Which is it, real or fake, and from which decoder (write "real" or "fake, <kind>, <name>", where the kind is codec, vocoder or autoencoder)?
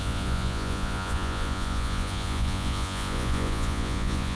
fake, vocoder, Vocos